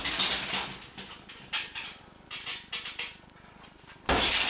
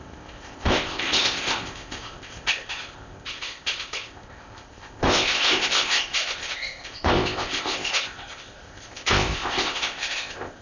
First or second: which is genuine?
first